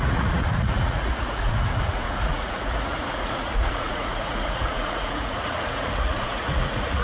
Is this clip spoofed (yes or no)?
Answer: yes